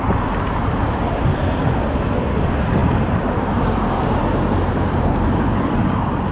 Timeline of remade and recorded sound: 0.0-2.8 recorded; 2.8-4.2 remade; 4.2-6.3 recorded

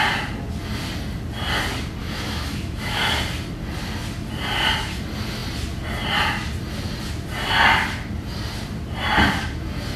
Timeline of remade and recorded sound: 0.0-2.0 recorded; 2.0-3.0 remade; 3.0-10.0 recorded

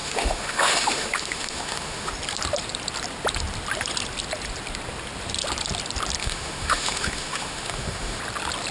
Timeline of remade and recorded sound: 0.0-2.1 remade; 2.1-6.2 recorded; 6.2-8.2 remade; 8.2-8.7 recorded

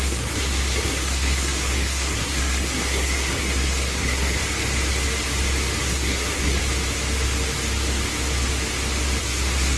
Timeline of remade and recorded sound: 0.0-4.4 remade; 4.4-5.8 recorded; 5.8-6.6 remade; 6.6-9.2 recorded; 9.2-9.8 remade

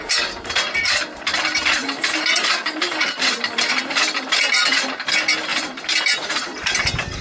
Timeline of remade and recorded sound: 0.0-0.8 recorded; 0.8-3.7 remade; 3.7-5.5 recorded; 5.5-7.2 remade

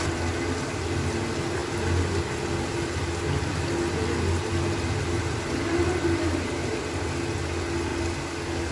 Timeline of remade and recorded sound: 0.0-8.7 recorded

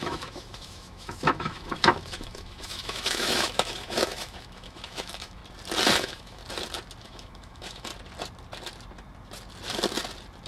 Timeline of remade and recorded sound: 0.0-5.4 remade; 5.4-6.0 recorded; 6.0-6.4 remade; 6.4-7.0 recorded; 7.0-7.9 remade; 7.9-10.5 recorded

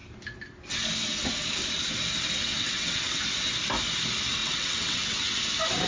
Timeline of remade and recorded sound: 0.0-2.4 recorded; 2.4-3.2 remade; 3.2-4.4 recorded; 4.4-5.4 remade; 5.4-5.9 recorded